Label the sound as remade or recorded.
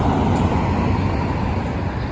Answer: recorded